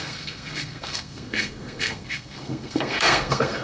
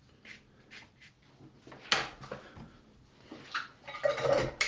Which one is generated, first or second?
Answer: first